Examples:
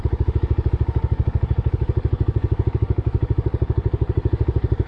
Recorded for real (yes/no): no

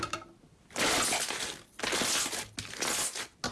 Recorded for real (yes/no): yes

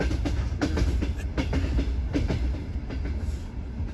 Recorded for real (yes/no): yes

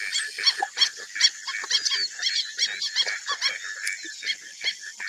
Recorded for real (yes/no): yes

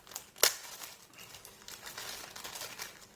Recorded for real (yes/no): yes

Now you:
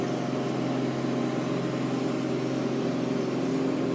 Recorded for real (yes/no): yes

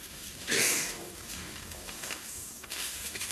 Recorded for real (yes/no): no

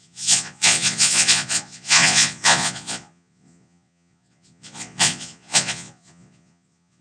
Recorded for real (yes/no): no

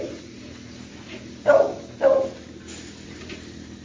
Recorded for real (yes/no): yes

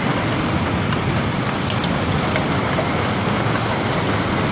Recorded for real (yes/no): yes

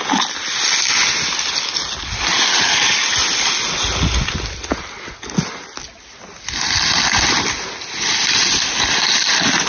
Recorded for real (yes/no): yes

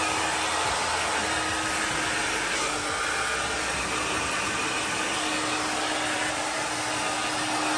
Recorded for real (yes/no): yes